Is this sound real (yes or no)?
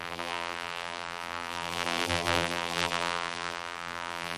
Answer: no